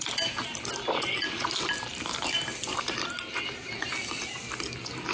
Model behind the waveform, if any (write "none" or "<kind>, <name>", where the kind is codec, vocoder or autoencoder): none